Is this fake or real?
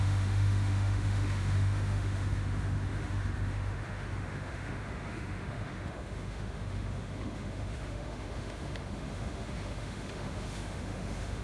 fake